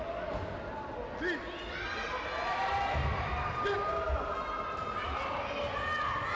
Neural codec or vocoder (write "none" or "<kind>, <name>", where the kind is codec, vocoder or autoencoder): none